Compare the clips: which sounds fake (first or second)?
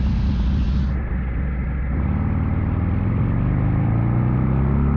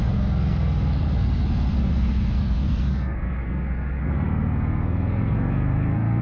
second